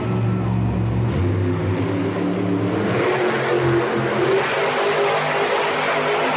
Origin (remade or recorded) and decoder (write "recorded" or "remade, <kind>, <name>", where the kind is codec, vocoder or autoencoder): recorded